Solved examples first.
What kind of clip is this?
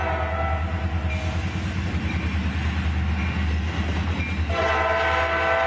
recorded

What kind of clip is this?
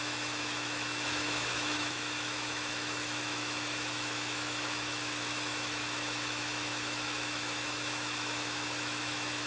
remade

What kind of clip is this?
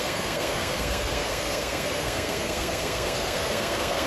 remade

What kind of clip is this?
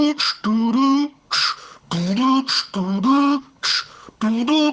remade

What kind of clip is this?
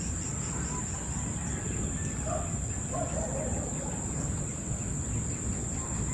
recorded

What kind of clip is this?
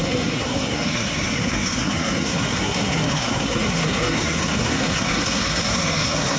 remade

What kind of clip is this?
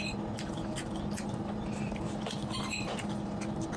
recorded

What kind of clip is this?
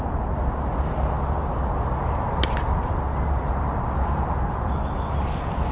recorded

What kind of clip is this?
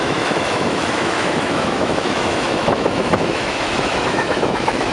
remade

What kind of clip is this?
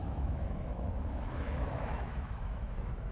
remade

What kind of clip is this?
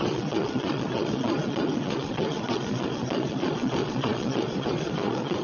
remade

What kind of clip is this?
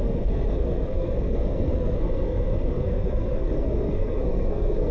remade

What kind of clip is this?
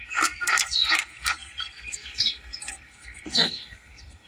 remade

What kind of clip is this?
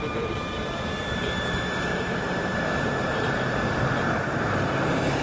remade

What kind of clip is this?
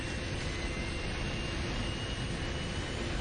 recorded